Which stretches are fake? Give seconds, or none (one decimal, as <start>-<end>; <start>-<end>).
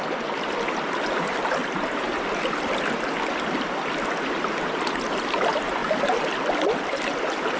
none